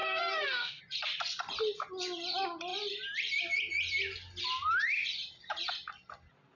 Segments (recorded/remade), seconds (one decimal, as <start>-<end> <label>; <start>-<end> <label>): 0.0-0.8 remade; 0.8-6.6 recorded